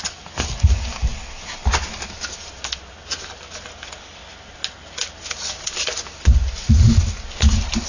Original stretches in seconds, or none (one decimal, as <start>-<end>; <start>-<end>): 0.0-7.9